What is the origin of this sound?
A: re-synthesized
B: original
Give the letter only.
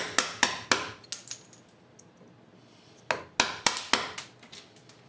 B